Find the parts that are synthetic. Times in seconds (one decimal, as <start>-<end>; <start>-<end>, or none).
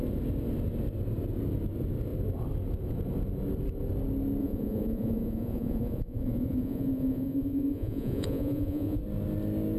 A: 4.4-9.0